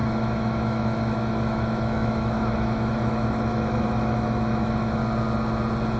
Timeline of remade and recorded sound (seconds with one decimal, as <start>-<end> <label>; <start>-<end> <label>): 0.0-5.0 remade; 5.0-6.0 recorded